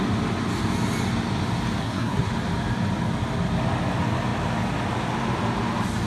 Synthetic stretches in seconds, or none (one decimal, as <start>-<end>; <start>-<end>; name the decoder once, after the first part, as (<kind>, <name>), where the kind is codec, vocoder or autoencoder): 1.8-2.3 (codec, SNAC)